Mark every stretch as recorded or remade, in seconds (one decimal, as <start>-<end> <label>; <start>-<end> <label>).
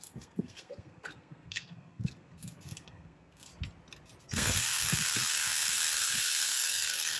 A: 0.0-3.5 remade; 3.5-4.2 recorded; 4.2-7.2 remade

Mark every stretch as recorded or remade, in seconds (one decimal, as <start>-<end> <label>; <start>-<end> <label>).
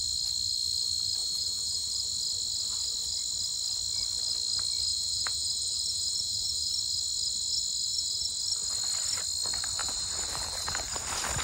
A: 0.0-1.2 recorded; 1.2-1.9 remade; 1.9-4.9 recorded; 4.9-6.7 remade; 6.7-7.9 recorded; 7.9-8.4 remade; 8.4-9.8 recorded; 9.8-11.0 remade; 11.0-11.4 recorded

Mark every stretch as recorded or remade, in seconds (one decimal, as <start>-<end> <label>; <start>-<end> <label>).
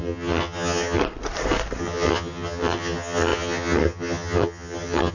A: 0.0-1.0 remade; 1.0-1.8 recorded; 1.8-5.1 remade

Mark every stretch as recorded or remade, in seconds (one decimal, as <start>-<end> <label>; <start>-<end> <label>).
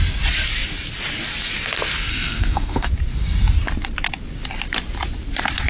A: 0.0-2.1 recorded; 2.1-2.9 remade; 2.9-5.7 recorded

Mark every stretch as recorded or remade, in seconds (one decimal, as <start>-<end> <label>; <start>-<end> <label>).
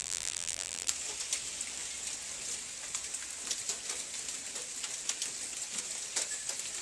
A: 0.0-0.9 remade; 0.9-6.8 recorded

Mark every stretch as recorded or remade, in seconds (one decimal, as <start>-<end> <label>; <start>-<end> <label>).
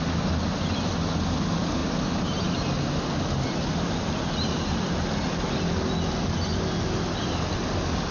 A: 0.0-8.1 recorded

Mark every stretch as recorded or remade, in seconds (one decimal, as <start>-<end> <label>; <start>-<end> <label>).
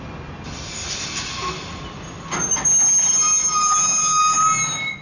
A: 0.0-5.0 recorded